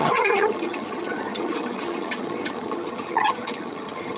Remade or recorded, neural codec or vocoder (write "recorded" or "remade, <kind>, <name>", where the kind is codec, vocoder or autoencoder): remade, vocoder, HiFi-GAN